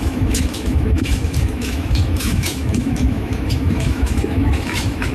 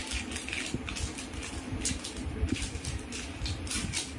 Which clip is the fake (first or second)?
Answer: first